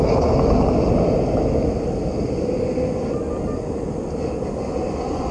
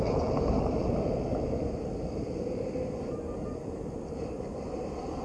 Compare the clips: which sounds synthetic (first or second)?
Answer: second